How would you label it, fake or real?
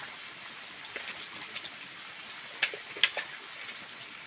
real